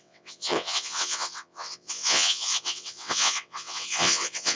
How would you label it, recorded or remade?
remade